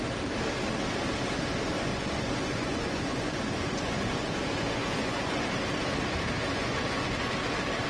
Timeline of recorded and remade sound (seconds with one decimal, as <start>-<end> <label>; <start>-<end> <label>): 0.0-1.9 recorded; 1.9-5.4 remade; 5.4-6.5 recorded; 6.5-7.4 remade; 7.4-7.9 recorded